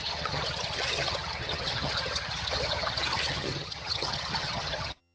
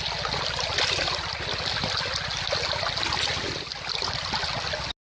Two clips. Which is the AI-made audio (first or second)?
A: first